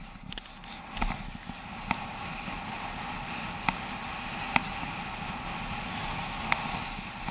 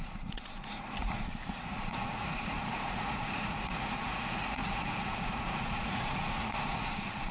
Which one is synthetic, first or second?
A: second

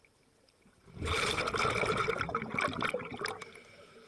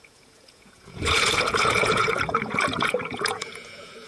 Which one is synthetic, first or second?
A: second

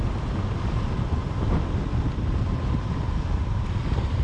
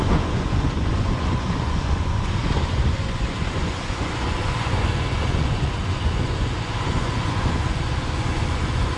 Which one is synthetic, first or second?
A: second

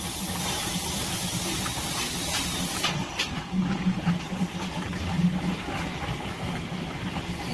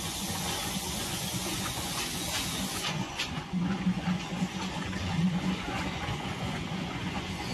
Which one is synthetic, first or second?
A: second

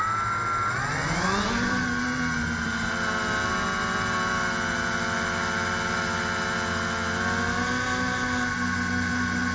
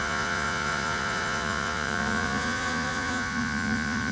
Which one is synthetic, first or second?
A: second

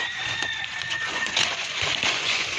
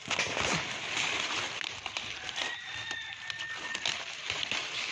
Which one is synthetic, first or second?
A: first